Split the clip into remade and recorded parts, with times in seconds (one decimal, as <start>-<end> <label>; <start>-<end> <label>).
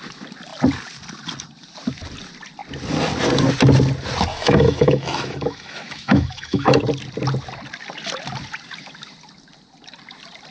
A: 0.0-4.3 recorded; 4.3-6.8 remade; 6.8-10.5 recorded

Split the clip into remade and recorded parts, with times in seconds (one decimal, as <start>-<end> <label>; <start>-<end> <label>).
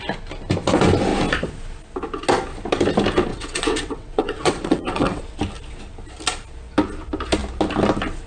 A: 0.0-3.3 recorded; 3.3-5.2 remade; 5.2-8.3 recorded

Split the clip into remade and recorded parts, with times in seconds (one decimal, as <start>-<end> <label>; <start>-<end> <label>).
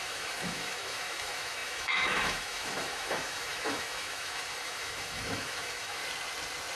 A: 0.0-6.0 remade; 6.0-6.8 recorded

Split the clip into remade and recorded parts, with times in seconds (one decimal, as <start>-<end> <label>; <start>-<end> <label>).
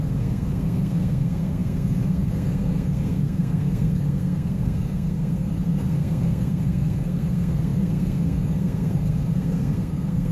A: 0.0-10.3 remade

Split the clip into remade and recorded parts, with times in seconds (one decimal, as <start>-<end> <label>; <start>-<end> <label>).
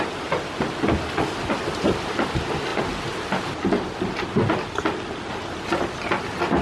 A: 0.0-6.6 recorded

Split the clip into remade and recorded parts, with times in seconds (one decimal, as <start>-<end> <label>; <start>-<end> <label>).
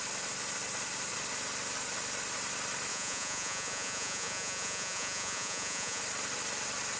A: 0.0-2.9 recorded; 2.9-6.0 remade; 6.0-7.0 recorded